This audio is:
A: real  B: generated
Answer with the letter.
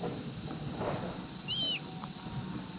A